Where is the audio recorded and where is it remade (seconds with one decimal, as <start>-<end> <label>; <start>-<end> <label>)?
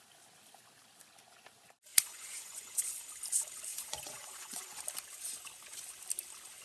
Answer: 0.0-1.9 recorded; 1.9-2.8 remade; 2.8-3.7 recorded; 3.7-4.8 remade; 4.8-6.6 recorded